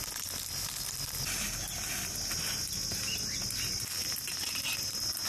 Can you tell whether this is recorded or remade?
recorded